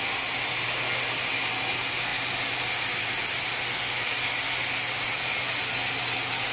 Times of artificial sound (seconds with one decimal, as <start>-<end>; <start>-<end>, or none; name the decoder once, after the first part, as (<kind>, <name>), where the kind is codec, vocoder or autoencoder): none